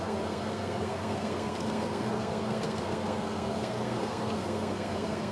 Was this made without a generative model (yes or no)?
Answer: no